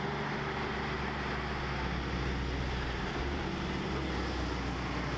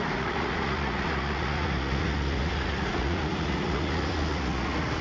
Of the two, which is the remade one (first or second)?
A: second